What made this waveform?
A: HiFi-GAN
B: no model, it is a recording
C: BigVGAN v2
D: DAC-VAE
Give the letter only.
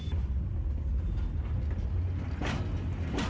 B